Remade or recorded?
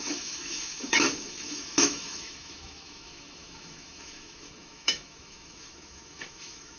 remade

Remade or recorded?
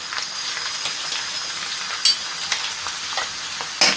recorded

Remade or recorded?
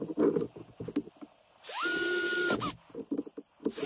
recorded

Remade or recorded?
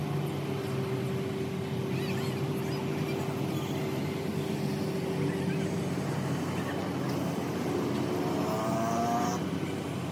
recorded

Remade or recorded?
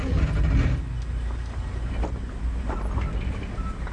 recorded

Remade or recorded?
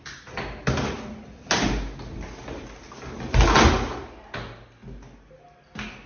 recorded